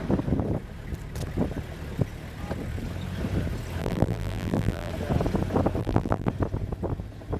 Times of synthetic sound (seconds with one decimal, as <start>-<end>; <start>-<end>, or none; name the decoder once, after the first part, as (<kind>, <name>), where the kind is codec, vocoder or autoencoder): 3.8-4.9 (vocoder, BigVGAN v2); 5.8-6.3